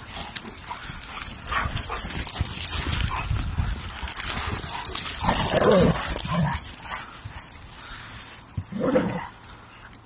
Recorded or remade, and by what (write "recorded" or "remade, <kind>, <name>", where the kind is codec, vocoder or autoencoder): recorded